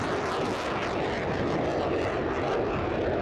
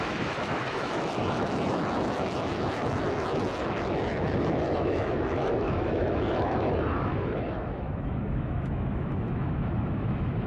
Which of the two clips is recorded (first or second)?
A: first